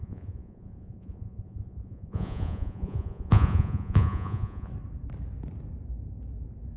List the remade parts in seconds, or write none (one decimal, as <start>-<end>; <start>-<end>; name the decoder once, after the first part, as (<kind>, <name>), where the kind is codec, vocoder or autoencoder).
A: 0.0-4.7 (vocoder, Vocos)